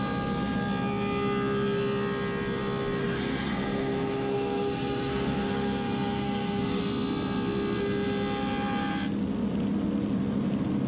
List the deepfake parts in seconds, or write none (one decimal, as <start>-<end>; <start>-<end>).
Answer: 3.0-6.8